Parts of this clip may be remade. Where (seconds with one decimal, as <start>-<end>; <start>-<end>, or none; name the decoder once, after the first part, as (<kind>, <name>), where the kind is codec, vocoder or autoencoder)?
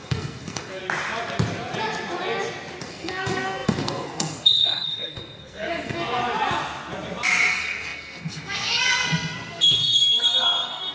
0.0-0.8 (codec, SNAC); 2.8-6.2; 7.5-10.9